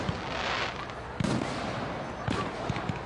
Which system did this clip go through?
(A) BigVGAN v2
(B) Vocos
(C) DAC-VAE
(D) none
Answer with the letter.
D